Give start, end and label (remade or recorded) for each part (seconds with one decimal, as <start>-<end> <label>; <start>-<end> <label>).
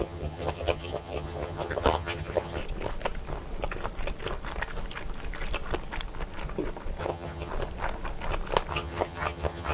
0.0-2.6 remade; 2.6-7.0 recorded; 7.0-7.5 remade; 7.5-8.7 recorded; 8.7-9.7 remade